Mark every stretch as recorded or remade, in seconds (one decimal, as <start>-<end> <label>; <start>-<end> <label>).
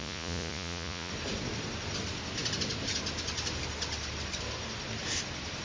0.0-1.1 remade; 1.1-5.6 recorded